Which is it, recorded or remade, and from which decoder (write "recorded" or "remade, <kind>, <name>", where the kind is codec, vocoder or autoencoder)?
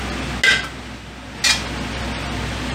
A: recorded